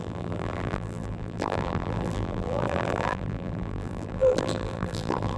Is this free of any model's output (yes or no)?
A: no